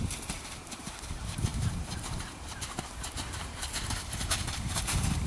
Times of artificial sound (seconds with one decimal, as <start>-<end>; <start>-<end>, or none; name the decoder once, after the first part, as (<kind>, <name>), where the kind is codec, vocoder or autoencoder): 0.0-5.3 (vocoder, BigVGAN v2)